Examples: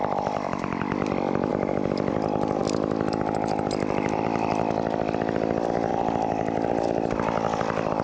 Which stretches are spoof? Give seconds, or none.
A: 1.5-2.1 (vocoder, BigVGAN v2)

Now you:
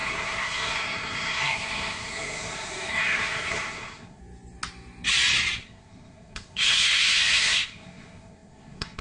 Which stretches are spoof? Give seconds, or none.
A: 0.0-4.2 (codec, SNAC); 5.6-9.0